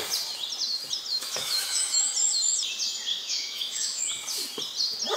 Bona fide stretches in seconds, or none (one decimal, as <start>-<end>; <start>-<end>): 0.0-1.1; 2.0-3.1; 4.0-5.2